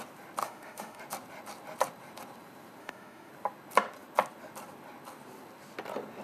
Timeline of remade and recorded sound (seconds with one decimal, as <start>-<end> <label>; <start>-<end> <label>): 0.0-0.4 recorded; 0.4-1.0 remade; 1.0-2.8 recorded; 2.8-3.3 remade; 3.3-6.2 recorded